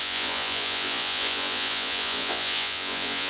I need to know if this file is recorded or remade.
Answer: remade